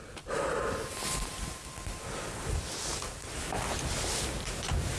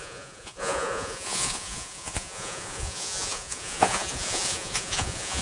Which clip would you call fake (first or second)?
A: second